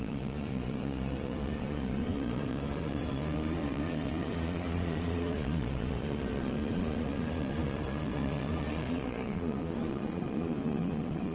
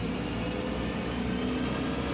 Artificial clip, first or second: first